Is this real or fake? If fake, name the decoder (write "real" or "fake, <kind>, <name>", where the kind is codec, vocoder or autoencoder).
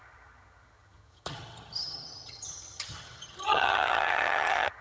fake, vocoder, HiFi-GAN